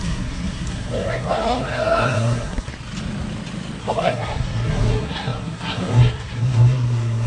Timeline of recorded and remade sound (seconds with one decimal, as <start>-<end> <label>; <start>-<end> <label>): 0.0-2.7 remade; 2.7-3.8 recorded; 3.8-7.3 remade